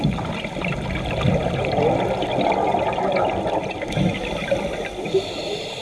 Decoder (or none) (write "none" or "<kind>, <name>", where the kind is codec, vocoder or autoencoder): none